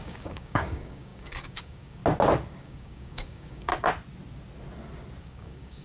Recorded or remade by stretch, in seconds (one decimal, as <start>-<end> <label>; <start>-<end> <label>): 0.0-2.0 remade; 2.0-2.6 recorded; 2.6-3.7 remade; 3.7-5.2 recorded; 5.2-5.8 remade